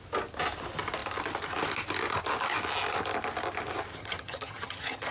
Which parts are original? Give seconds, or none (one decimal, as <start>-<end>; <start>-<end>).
0.0-3.9